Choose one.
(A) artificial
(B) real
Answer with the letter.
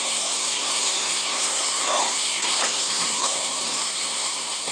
A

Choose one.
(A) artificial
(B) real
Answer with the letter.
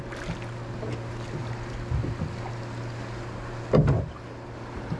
B